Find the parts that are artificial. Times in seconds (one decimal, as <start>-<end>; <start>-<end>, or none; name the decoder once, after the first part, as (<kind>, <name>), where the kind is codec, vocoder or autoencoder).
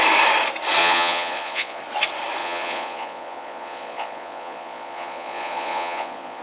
0.8-1.8 (vocoder, Vocos); 2.4-6.4